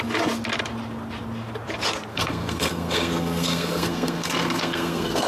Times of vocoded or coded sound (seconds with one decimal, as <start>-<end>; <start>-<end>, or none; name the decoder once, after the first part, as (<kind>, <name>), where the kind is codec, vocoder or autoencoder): 2.1-5.3 (codec, SNAC)